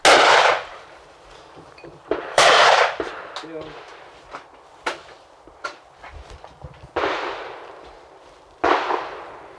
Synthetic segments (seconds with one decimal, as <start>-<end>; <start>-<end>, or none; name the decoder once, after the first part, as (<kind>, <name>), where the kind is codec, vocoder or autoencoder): 0.7-2.8 (vocoder, BigVGAN v2)